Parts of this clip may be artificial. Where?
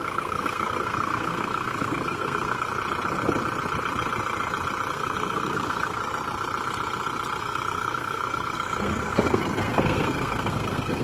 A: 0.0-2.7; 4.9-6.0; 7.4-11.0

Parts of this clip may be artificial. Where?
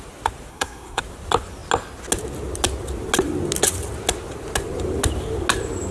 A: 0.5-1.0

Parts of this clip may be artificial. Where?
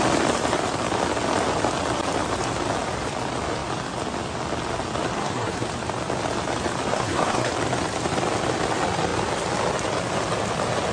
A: 5.2-5.7; 6.9-7.5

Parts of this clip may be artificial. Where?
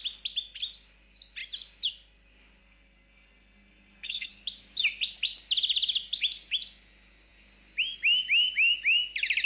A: 2.6-4.3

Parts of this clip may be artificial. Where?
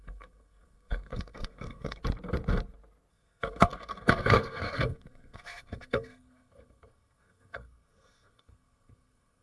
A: 0.0-2.0; 3.1-9.4